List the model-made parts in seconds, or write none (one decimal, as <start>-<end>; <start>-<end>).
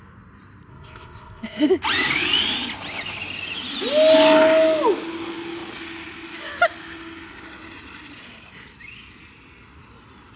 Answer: 0.7-1.7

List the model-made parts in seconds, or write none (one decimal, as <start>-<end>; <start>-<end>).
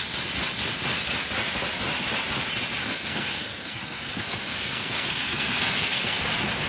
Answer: 2.8-6.2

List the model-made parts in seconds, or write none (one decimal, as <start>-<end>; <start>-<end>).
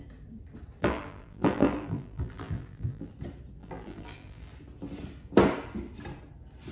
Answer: 0.8-3.1; 3.6-4.5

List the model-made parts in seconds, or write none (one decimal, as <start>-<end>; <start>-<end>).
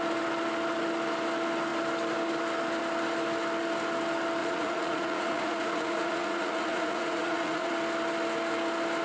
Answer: 4.4-7.7